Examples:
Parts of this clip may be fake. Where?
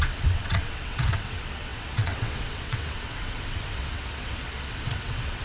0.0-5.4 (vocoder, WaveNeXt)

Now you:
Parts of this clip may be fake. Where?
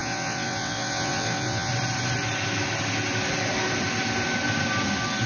0.0-1.7 (vocoder, WaveNeXt)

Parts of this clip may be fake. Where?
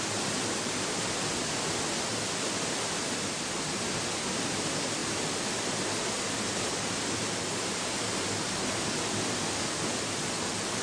none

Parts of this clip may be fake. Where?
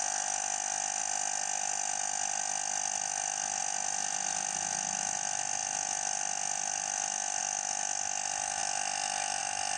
none